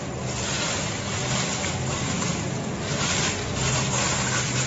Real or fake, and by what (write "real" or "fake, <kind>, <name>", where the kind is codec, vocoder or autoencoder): real